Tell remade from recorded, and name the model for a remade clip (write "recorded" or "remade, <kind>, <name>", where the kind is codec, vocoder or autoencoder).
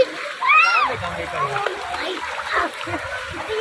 recorded